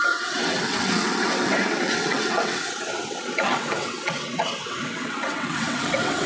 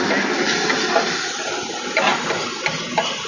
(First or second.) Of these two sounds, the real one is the second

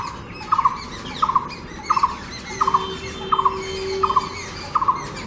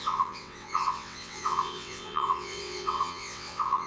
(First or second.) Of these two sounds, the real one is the first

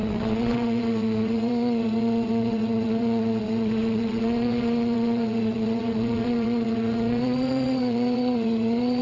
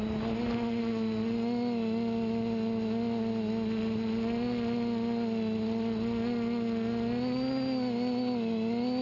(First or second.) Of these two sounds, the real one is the second